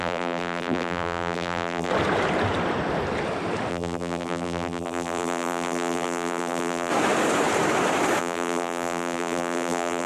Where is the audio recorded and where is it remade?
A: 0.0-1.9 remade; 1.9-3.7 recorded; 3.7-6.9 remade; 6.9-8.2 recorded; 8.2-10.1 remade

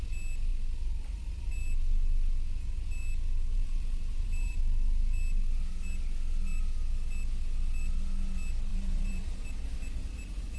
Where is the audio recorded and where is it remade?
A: 0.0-3.5 recorded; 3.5-4.6 remade; 4.6-8.7 recorded; 8.7-9.4 remade; 9.4-10.6 recorded

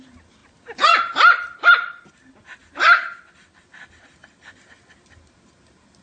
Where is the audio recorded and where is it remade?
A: 0.0-6.0 recorded

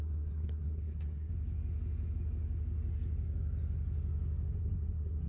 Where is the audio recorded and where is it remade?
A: 0.0-1.3 remade; 1.3-4.5 recorded; 4.5-5.3 remade